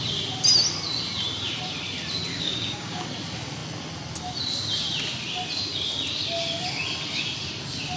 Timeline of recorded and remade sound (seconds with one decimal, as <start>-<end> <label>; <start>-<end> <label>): 0.0-2.3 recorded; 2.3-3.1 remade; 3.1-8.0 recorded